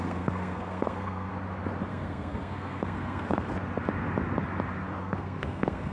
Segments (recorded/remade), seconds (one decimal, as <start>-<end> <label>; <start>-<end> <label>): 0.0-1.3 remade; 1.3-1.9 recorded; 1.9-3.5 remade; 3.5-5.0 recorded; 5.0-5.9 remade